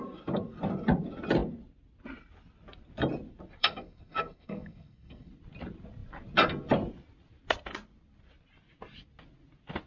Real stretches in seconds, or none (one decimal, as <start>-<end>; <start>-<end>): 0.0-3.6; 5.3-9.9